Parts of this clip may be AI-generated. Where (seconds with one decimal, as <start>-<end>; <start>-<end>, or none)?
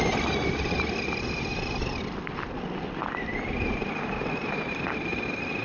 0.5-3.9